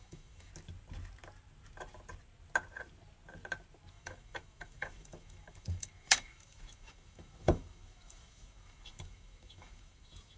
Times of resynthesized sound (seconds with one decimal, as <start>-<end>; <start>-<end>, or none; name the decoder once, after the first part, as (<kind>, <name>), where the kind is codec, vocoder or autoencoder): 0.0-0.5 (autoencoder, DAC-VAE); 3.9-10.4